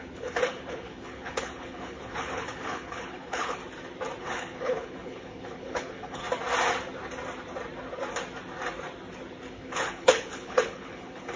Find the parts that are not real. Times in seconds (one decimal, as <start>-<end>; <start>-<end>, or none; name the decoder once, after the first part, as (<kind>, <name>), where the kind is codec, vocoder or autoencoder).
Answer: 0.0-3.6 (codec, HILCodec); 4.2-6.2; 9.5-11.4